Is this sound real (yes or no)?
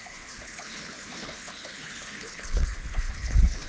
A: no